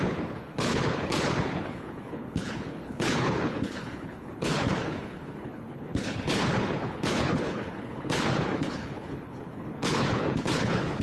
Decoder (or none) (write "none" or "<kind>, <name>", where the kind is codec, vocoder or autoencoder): codec, HILCodec